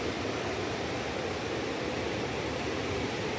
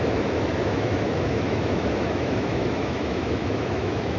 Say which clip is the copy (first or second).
second